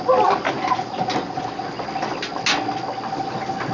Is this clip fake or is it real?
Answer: real